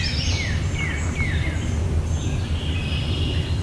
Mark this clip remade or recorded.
recorded